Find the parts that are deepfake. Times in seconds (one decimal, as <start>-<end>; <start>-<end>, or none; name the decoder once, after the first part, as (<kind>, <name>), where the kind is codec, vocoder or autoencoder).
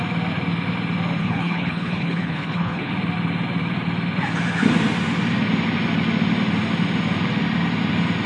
1.2-2.9 (codec, HILCodec)